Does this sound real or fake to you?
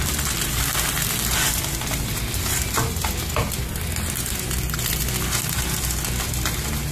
real